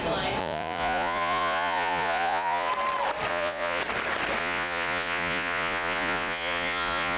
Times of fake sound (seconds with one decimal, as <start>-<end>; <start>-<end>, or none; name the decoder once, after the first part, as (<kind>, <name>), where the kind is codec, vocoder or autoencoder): 0.4-2.7 (vocoder, Vocos); 3.3-3.8; 4.4-7.2